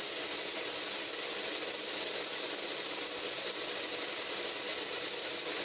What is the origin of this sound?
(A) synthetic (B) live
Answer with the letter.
B